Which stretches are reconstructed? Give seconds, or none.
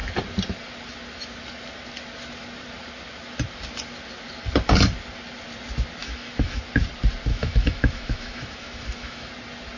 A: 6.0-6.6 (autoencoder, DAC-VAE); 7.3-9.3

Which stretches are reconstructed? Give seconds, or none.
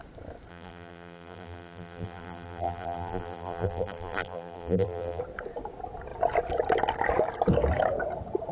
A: 0.5-5.2 (vocoder, BigVGAN v2)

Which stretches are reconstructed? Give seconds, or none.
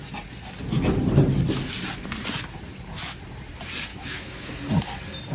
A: 3.9-4.5 (autoencoder, DAC-VAE)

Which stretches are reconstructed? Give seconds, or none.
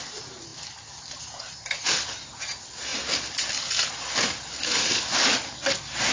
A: none